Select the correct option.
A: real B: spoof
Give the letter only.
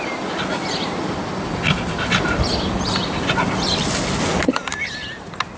A